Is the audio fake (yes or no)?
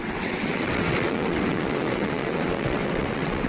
yes